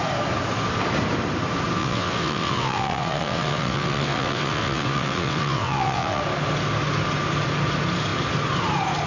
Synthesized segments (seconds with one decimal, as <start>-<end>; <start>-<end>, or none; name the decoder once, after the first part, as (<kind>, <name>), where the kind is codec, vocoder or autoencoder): 1.8-6.2 (vocoder, WaveNeXt)